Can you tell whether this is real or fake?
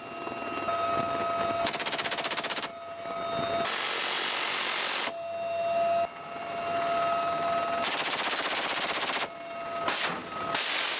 real